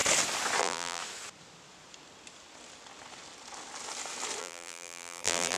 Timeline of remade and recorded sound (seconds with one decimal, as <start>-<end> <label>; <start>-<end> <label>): 0.0-0.6 recorded; 0.6-1.0 remade; 1.0-4.4 recorded; 4.4-5.6 remade